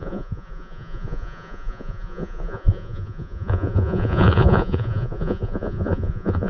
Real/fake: fake